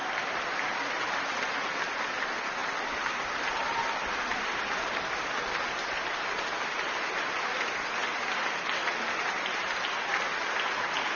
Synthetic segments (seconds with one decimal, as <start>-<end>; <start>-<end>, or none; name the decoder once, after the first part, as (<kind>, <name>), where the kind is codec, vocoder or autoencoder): 0.0-2.0 (vocoder, BigVGAN v2); 2.6-6.5